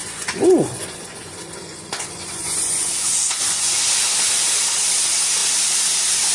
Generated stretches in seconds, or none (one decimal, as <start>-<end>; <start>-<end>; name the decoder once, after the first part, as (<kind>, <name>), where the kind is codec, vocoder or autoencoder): 0.0-3.8 (vocoder, Vocos)